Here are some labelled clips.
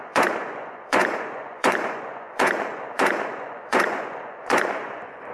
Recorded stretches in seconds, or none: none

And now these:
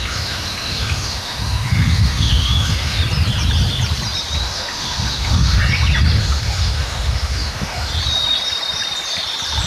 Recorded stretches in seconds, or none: 3.0-4.4; 5.6-6.2; 7.9-9.7

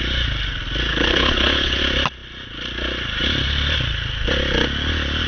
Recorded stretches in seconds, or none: 0.0-0.9; 1.8-5.3

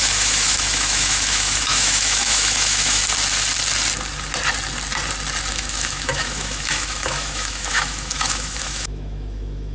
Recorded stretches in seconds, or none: 3.0-5.5